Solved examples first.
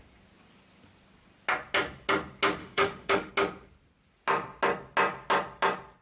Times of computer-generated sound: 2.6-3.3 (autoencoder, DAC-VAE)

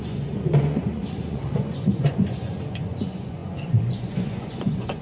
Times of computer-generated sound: 0.0-5.0 (vocoder, Vocos)

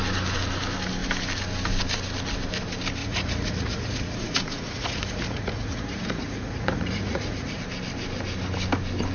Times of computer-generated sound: 3.0-7.6 (vocoder, Vocos)

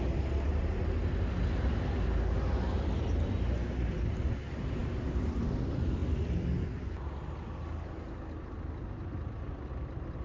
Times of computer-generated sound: none

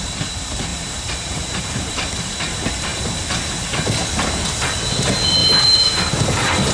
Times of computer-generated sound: 0.7-2.1 (vocoder, BigVGAN v2); 5.4-6.1